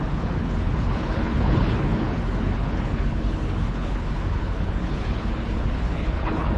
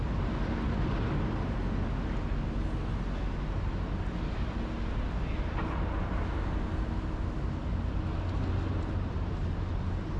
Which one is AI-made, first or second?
first